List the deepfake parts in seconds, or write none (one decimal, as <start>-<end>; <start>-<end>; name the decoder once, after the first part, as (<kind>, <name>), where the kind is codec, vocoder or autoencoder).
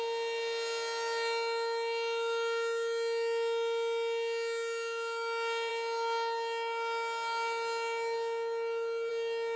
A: none